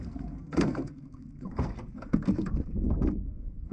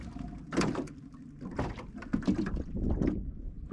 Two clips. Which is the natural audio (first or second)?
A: second